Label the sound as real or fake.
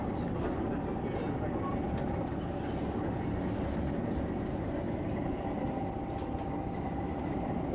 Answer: real